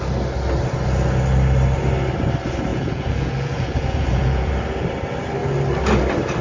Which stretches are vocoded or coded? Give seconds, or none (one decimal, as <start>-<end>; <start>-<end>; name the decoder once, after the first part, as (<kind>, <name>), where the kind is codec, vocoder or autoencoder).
2.7-4.5 (vocoder, Vocos)